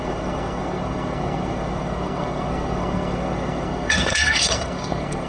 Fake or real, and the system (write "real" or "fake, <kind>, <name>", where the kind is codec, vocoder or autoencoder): fake, codec, SNAC